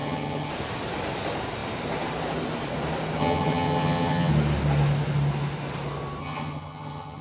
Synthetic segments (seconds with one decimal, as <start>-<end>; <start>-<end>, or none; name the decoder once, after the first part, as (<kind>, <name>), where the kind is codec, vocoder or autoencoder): 0.0-0.5 (vocoder, HiFi-GAN); 3.2-4.3; 6.2-7.2